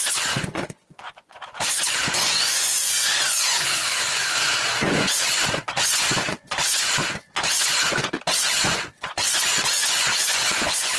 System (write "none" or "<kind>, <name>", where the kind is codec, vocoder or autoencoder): vocoder, Vocos